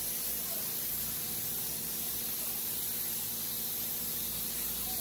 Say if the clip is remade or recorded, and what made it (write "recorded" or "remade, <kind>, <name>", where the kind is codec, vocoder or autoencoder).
recorded